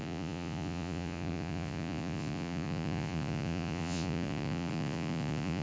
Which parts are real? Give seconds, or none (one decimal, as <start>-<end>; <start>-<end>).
none